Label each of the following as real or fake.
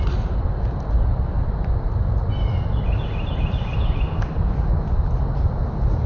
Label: real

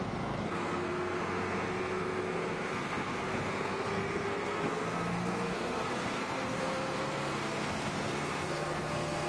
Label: fake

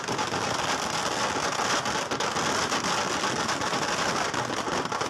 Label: real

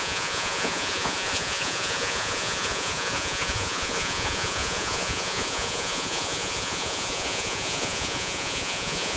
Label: fake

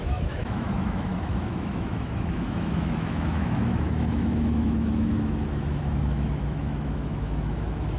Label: fake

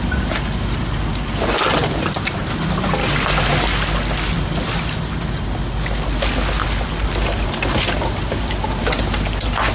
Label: real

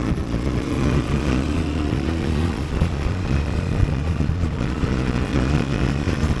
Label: fake